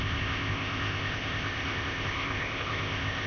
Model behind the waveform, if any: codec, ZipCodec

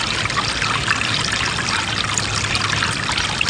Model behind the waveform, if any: none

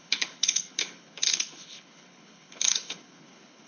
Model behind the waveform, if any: codec, HILCodec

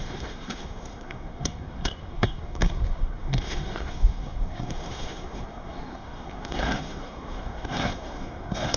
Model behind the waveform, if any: codec, SNAC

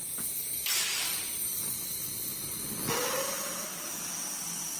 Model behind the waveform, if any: none